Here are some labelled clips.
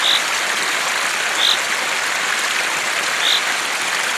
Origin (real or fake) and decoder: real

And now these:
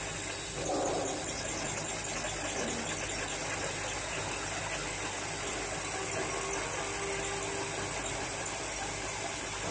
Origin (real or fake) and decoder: real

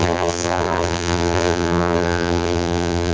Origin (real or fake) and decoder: fake, vocoder, BigVGAN v2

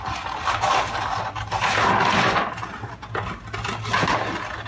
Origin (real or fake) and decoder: real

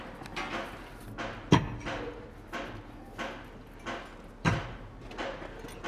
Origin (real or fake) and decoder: real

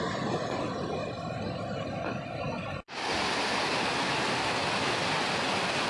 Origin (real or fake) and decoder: real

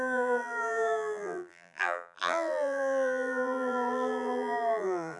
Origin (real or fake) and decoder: fake, vocoder, BigVGAN v2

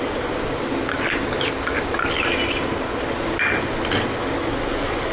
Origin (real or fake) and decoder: real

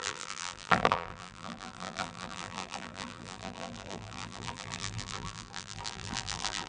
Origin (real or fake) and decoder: fake, vocoder, BigVGAN v2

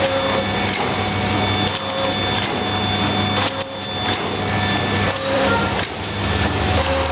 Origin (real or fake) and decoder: fake, vocoder, BigVGAN v2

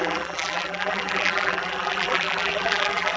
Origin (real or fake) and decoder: fake, vocoder, BigVGAN v2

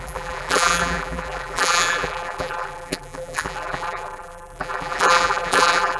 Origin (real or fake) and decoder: fake, vocoder, BigVGAN v2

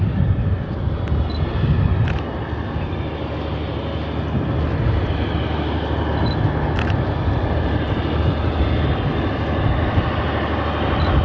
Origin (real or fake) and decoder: real